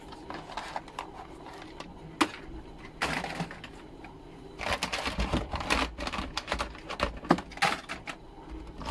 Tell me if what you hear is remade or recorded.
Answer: recorded